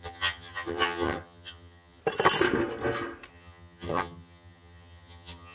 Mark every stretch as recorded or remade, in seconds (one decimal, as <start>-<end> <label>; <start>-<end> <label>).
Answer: 0.0-2.0 remade; 2.0-3.3 recorded; 3.3-5.5 remade